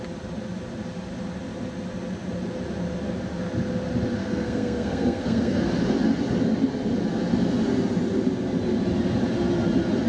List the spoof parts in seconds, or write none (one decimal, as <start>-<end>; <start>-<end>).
4.2-5.7